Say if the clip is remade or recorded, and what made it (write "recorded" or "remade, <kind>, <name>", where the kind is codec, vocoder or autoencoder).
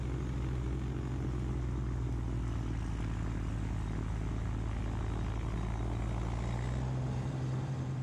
recorded